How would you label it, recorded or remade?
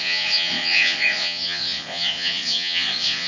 remade